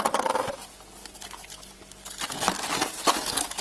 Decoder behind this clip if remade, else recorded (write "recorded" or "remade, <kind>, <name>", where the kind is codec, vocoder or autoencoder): recorded